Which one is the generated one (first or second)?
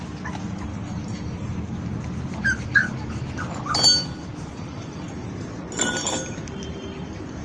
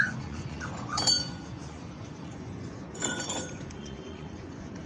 second